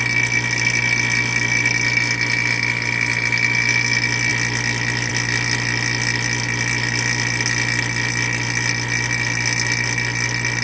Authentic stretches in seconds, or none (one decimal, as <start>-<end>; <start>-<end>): 0.0-10.6